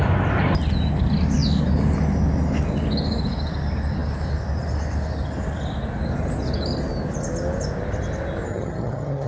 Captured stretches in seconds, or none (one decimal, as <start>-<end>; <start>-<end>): 0.0-8.5